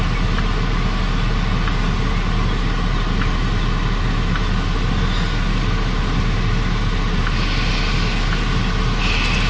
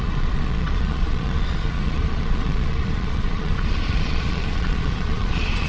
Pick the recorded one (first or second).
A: first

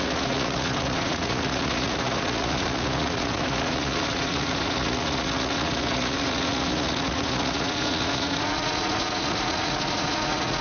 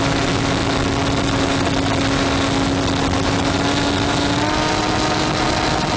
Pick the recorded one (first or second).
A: second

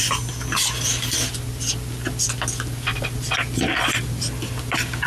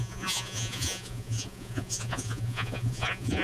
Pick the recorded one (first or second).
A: first